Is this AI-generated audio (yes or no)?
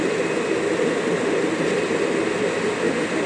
no